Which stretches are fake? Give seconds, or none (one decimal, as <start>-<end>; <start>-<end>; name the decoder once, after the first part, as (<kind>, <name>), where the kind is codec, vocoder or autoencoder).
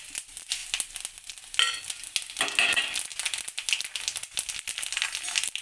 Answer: none